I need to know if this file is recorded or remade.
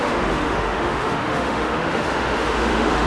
remade